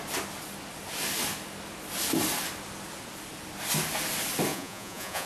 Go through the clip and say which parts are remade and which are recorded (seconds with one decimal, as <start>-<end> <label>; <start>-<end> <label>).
0.0-4.5 recorded; 4.5-5.3 remade